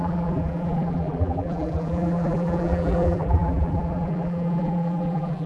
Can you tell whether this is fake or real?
fake